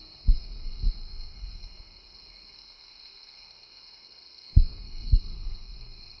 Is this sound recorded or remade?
remade